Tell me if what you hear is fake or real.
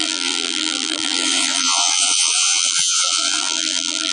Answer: fake